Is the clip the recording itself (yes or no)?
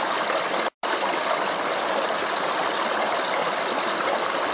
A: yes